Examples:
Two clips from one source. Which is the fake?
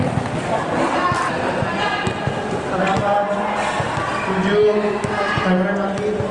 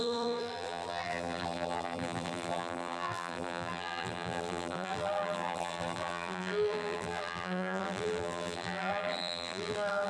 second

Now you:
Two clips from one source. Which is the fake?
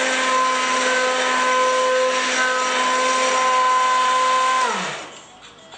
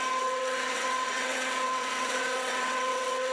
second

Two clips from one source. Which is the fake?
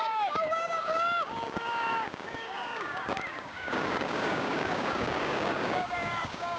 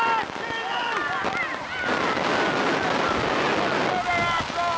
first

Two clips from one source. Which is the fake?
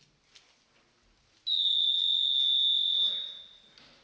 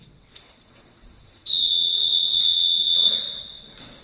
second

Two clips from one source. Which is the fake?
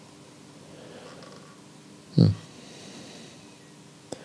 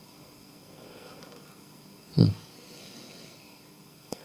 second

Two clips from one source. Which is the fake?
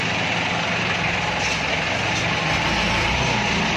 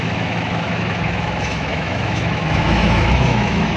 second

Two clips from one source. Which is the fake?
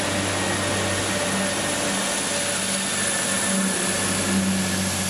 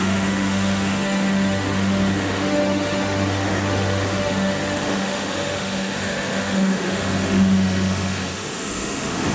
second